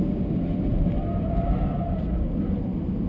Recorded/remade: recorded